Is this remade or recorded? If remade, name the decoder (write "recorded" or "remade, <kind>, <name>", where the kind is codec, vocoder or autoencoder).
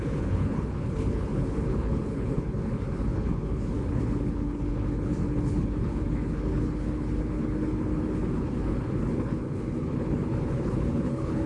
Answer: remade, codec, HILCodec